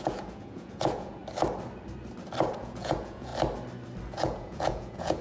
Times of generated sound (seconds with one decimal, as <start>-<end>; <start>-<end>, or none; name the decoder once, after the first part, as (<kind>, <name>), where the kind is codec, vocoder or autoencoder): 0.0-1.2 (vocoder, Vocos); 2.5-3.3; 4.1-5.2